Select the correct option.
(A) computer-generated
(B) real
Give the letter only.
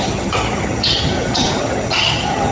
A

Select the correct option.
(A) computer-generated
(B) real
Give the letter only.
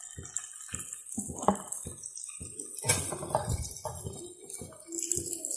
B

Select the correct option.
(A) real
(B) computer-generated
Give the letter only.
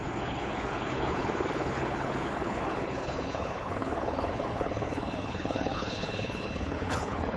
B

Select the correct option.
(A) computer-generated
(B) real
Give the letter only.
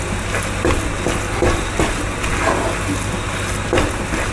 B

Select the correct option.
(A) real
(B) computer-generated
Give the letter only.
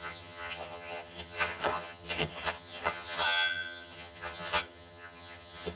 B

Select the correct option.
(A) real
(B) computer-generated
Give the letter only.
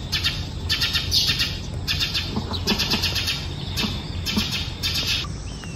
A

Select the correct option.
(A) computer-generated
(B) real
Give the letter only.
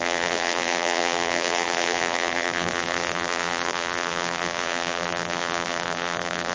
A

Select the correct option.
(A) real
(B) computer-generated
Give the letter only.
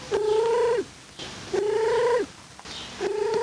A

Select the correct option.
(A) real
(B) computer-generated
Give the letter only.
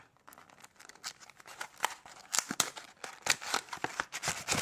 A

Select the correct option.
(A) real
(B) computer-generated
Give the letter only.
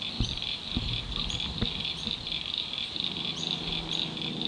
A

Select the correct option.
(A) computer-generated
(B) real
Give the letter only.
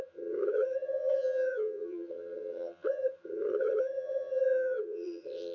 A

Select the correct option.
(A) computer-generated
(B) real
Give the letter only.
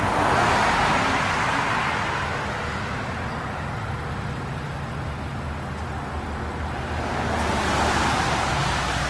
B